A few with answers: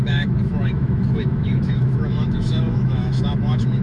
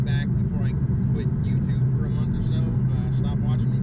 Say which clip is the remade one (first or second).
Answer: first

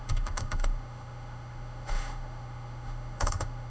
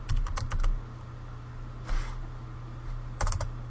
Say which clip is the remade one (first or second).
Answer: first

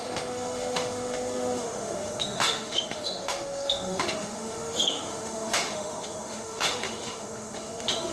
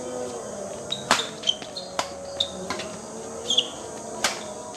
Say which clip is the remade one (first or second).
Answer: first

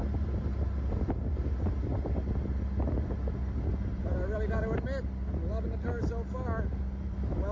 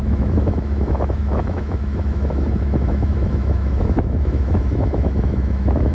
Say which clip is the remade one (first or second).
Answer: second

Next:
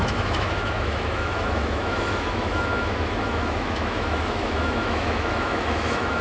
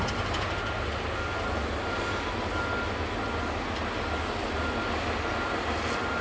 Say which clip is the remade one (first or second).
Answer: first